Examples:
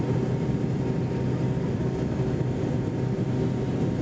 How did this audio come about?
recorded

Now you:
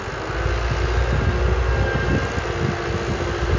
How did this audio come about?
recorded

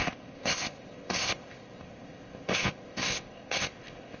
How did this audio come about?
remade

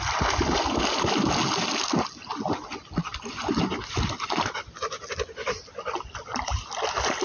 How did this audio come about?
recorded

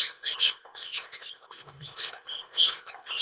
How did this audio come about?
remade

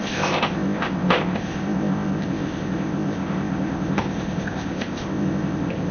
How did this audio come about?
remade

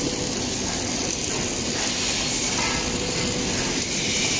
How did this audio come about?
recorded